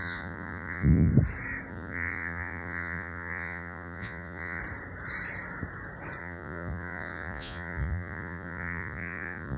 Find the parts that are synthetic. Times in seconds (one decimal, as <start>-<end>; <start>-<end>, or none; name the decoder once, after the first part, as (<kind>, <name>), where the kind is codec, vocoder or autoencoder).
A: 0.0-1.1 (vocoder, Vocos); 1.7-4.6; 6.2-9.6